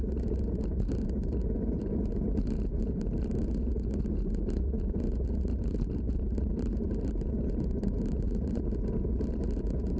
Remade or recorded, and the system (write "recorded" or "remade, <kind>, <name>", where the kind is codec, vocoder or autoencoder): remade, vocoder, BigVGAN v2